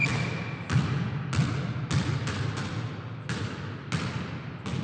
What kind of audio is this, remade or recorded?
recorded